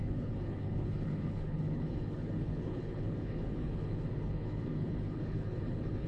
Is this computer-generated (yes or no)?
yes